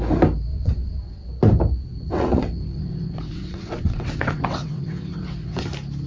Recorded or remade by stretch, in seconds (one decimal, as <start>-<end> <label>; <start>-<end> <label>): 0.0-0.5 recorded; 0.5-1.3 remade; 1.3-1.9 recorded; 1.9-5.6 remade; 5.6-6.1 recorded